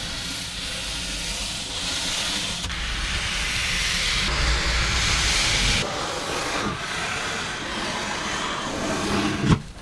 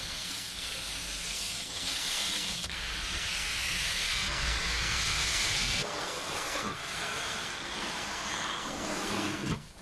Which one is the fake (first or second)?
second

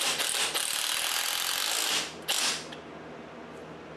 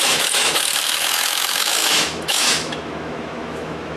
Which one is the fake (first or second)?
second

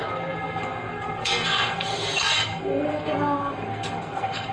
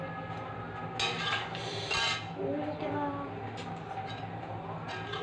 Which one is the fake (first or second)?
first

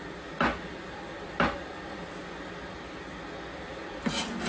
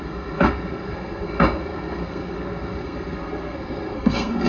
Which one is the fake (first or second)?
second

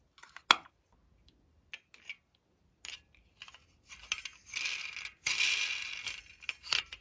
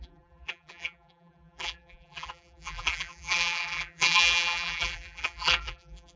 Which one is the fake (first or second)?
second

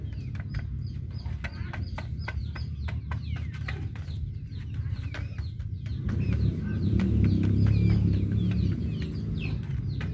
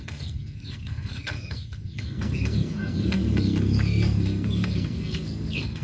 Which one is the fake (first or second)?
second